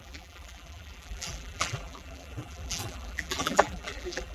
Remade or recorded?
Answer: remade